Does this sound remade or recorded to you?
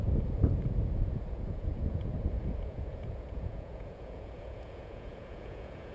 remade